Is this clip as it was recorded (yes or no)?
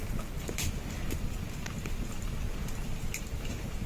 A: yes